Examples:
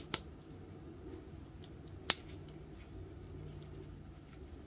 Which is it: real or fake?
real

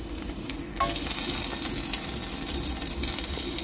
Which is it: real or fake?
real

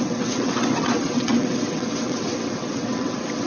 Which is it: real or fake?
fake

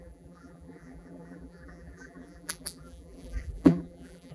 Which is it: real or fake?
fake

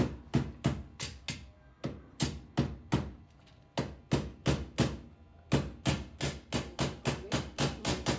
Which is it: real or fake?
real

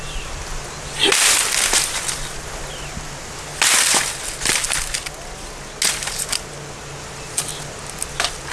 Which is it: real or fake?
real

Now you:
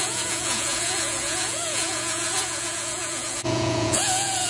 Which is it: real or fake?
fake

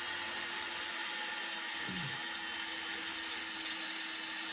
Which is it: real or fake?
real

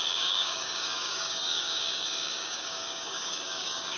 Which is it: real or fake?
fake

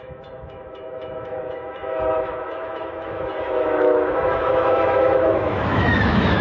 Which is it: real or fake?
fake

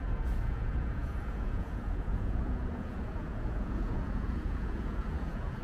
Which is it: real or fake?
fake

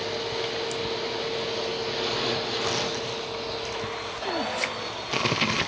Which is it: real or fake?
real